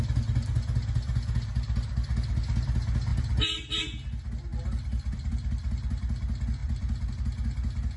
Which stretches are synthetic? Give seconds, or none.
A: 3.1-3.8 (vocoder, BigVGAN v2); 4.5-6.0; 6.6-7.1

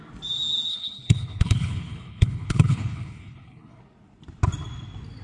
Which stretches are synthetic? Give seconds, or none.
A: 0.7-3.8 (codec, HILCodec)

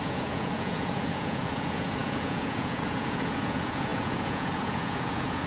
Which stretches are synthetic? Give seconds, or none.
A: 0.0-5.5 (vocoder, Vocos)